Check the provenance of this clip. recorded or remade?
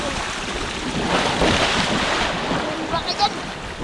recorded